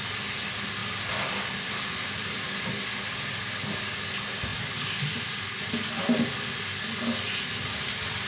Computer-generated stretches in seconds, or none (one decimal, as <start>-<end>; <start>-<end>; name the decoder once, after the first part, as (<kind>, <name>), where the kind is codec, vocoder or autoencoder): 0.8-2.6 (vocoder, BigVGAN v2); 4.5-6.6